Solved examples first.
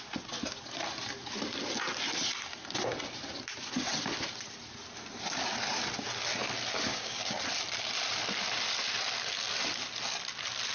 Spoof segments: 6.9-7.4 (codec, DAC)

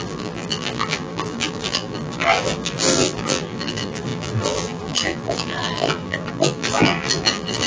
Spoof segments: 0.0-7.7 (vocoder, BigVGAN v2)

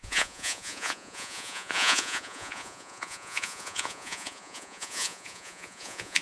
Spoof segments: 0.0-6.2 (vocoder, Vocos)

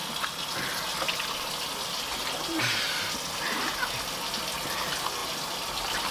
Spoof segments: none

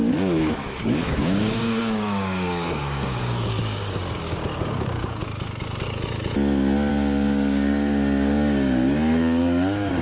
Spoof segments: 0.0-5.2 (codec, DAC); 6.9-10.0

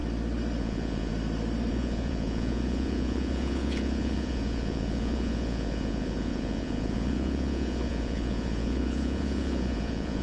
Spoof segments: 0.6-1.1 (vocoder, Vocos); 1.7-10.2

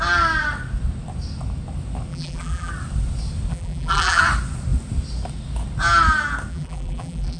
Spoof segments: 2.1-2.7 (vocoder, BigVGAN v2); 3.5-4.2; 6.5-7.4